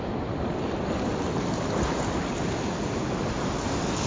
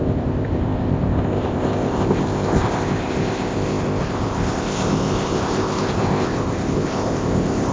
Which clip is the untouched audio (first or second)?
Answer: first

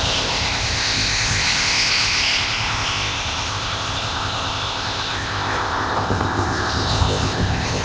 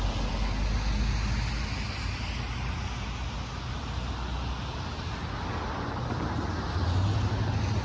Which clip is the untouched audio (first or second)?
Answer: second